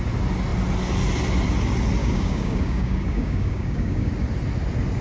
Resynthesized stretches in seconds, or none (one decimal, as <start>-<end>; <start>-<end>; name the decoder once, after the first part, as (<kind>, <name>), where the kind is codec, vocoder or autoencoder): 2.0-4.1 (codec, DAC)